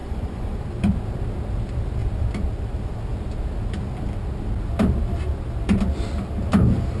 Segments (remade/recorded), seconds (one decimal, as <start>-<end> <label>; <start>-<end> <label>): 0.0-0.6 remade; 0.6-7.0 recorded